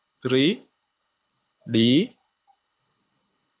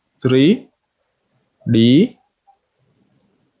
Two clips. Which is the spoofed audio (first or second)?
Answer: first